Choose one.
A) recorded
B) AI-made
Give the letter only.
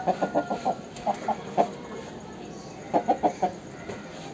A